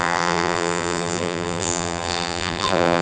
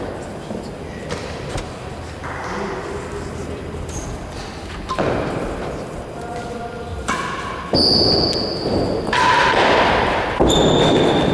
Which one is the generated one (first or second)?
first